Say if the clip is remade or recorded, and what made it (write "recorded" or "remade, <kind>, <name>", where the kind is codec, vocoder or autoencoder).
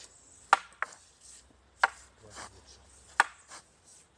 recorded